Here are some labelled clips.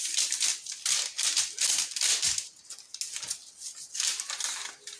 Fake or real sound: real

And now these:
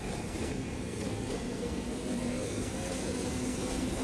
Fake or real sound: fake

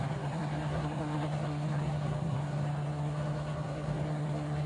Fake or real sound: fake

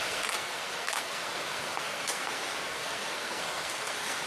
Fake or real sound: fake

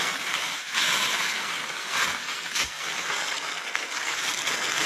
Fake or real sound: fake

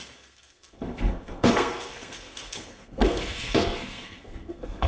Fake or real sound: fake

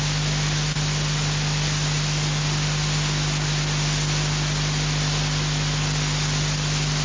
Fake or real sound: real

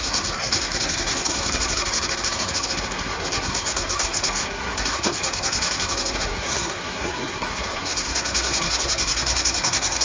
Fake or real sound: fake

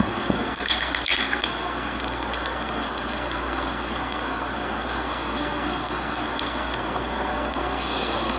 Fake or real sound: fake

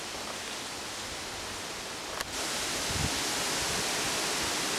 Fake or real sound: real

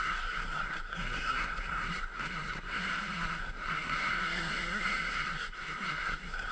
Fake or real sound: fake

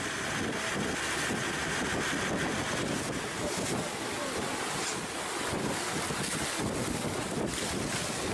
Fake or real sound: real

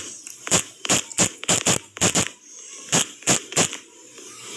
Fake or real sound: real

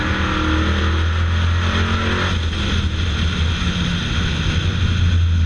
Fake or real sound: real